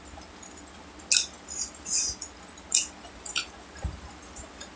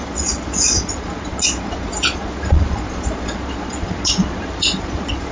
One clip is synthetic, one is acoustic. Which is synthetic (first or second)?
second